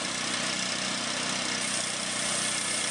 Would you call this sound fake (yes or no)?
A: no